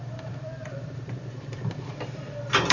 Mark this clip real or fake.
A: fake